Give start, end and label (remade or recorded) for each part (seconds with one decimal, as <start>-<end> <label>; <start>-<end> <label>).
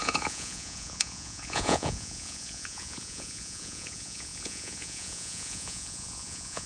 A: 0.0-6.7 remade